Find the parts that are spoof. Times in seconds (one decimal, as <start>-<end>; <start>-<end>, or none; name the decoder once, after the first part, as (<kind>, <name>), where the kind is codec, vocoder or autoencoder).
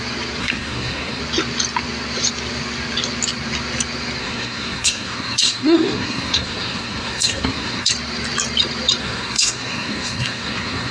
0.4-1.2 (codec, SNAC); 4.2-7.9; 9.0-10.9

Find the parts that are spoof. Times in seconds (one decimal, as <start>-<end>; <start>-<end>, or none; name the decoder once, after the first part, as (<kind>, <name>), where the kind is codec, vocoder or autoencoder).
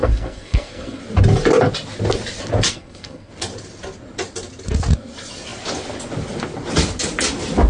0.0-1.0 (codec, SNAC); 2.7-3.3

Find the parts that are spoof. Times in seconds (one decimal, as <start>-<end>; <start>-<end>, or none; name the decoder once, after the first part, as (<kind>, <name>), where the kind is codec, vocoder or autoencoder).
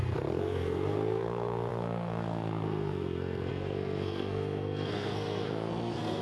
0.0-6.2 (codec, SNAC)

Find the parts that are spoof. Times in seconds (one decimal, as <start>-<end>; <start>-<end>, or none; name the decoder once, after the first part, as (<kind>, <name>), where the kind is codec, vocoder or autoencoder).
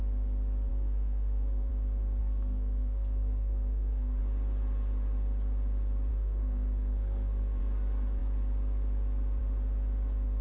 0.7-1.7 (codec, SNAC); 2.2-4.2; 6.1-7.6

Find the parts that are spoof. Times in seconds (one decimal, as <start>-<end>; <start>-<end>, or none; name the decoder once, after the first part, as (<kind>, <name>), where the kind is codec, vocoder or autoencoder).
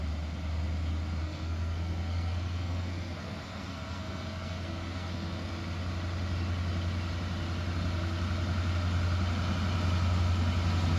1.2-5.5 (codec, SNAC)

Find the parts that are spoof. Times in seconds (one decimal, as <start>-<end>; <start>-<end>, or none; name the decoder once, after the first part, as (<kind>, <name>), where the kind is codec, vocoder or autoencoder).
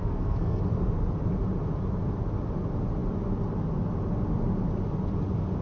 0.0-0.6 (codec, SNAC)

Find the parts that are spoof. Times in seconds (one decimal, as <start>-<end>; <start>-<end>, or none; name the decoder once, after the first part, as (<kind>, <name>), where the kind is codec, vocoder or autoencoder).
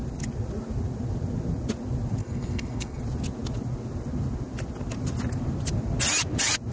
2.2-3.0 (codec, SNAC)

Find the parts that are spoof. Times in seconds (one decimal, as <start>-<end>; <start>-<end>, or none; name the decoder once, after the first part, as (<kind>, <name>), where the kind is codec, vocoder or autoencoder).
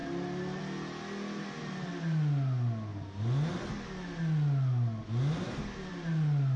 none